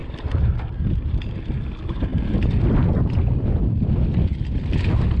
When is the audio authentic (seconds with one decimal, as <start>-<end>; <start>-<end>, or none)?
0.0-5.2